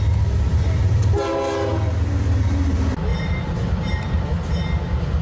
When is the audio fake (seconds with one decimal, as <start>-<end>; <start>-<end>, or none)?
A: 0.5-1.3; 3.1-4.2